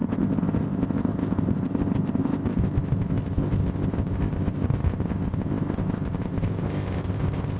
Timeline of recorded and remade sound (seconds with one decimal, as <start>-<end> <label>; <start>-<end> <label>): 0.0-7.6 remade